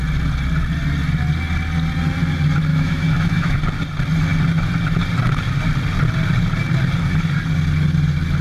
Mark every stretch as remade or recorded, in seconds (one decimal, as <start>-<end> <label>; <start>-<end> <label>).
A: 0.0-2.7 recorded; 2.7-3.6 remade; 3.6-8.4 recorded